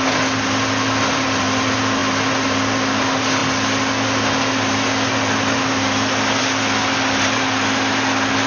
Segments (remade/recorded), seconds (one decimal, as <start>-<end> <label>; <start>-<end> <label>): 0.0-8.5 recorded